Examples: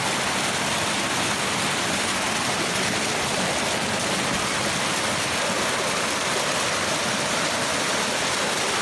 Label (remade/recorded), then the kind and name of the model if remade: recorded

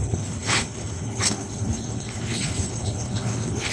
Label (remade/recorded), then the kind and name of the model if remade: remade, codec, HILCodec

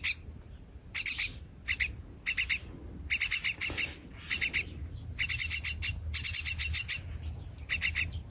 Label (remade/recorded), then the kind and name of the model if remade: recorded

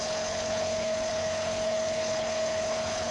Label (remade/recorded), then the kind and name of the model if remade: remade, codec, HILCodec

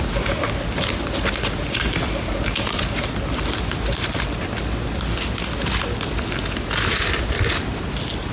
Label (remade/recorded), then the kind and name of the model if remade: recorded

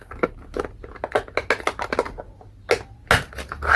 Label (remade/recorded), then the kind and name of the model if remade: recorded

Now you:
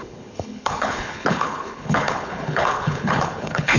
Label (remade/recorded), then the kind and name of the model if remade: remade, codec, HILCodec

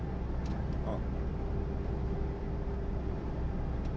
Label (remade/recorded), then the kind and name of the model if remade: recorded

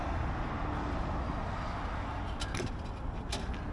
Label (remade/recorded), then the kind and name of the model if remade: recorded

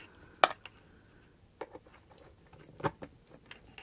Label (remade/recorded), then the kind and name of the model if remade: recorded